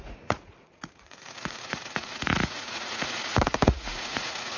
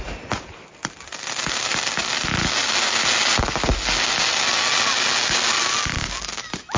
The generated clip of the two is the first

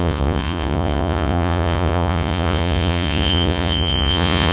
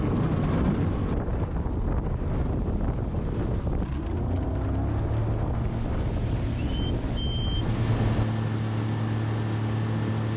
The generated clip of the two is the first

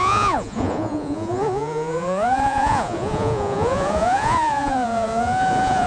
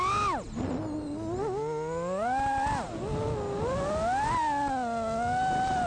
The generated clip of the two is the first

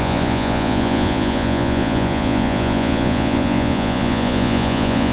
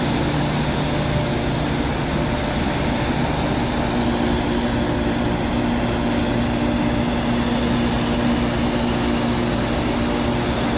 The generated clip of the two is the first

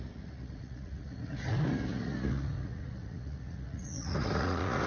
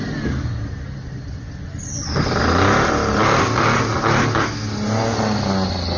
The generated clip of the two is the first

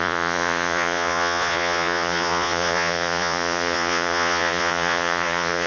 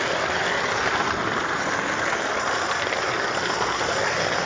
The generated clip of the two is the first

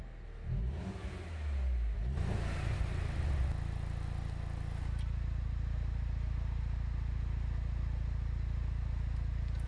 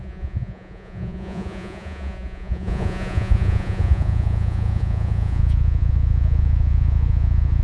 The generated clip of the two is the second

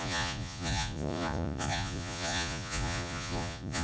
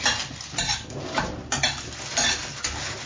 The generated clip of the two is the first